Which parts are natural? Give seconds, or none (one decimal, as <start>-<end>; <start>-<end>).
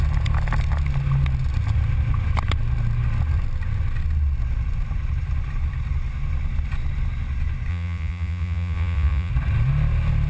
0.0-7.7; 9.3-10.3